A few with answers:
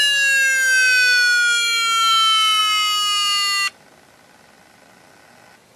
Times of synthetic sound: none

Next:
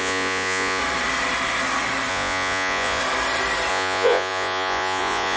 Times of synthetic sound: 0.0-0.8 (vocoder, Vocos); 2.1-3.0; 3.7-5.4

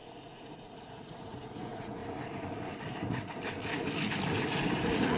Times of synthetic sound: 0.0-2.0 (vocoder, Vocos); 4.8-5.2

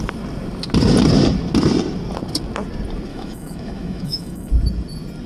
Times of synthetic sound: 3.1-4.5 (autoencoder, DAC-VAE)

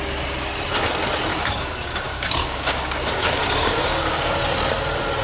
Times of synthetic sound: 1.3-4.4 (codec, DAC)

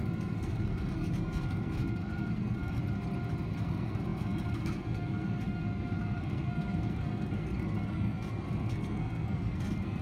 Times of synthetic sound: 0.0-2.8 (codec, SNAC); 3.6-10.0